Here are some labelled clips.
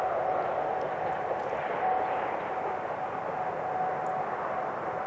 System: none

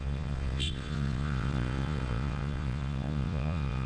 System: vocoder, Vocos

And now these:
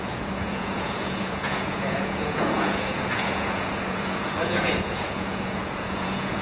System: vocoder, Vocos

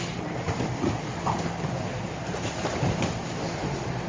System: none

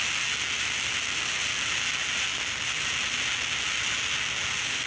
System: none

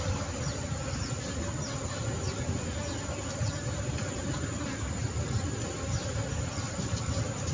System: none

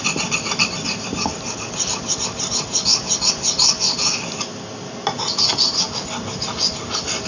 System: none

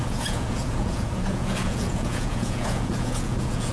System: vocoder, Vocos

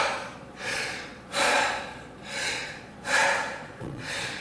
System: vocoder, Vocos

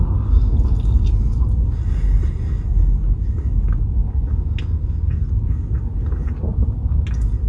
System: none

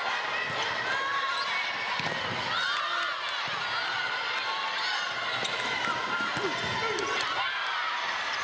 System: none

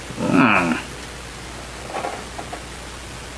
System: none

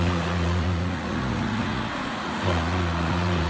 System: vocoder, Vocos